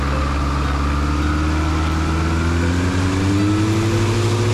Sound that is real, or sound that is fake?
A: real